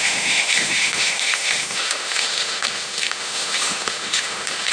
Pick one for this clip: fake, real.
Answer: fake